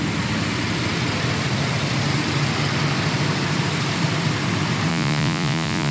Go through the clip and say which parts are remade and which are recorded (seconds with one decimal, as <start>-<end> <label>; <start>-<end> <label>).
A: 0.0-4.9 recorded; 4.9-5.9 remade

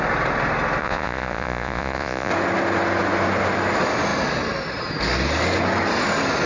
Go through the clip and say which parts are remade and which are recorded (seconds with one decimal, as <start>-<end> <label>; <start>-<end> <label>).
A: 0.0-0.8 recorded; 0.8-2.3 remade; 2.3-6.5 recorded

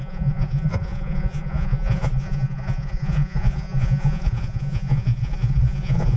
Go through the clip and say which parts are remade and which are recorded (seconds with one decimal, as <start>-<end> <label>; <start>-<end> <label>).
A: 0.0-6.2 remade

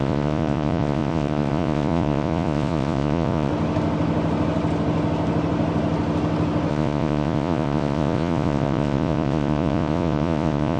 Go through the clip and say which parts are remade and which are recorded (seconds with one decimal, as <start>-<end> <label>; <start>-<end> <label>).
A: 0.0-3.5 remade; 3.5-6.7 recorded; 6.7-10.8 remade

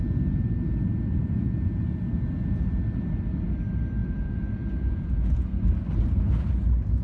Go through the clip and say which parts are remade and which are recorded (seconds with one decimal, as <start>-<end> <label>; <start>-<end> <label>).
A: 0.0-1.2 recorded; 1.2-1.8 remade; 1.8-4.0 recorded; 4.0-5.6 remade; 5.6-7.0 recorded

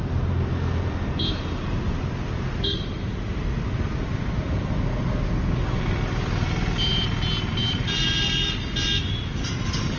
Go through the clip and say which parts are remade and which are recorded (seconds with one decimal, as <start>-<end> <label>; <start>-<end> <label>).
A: 0.0-10.0 recorded

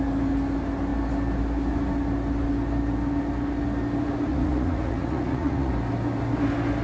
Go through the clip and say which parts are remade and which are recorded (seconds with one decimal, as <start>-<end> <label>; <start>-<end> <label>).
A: 0.0-4.3 recorded; 4.3-5.7 remade; 5.7-6.8 recorded

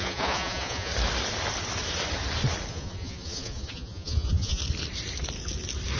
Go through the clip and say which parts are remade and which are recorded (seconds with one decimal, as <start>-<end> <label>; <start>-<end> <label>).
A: 0.0-0.9 remade; 0.9-2.7 recorded; 2.7-4.6 remade; 4.6-6.0 recorded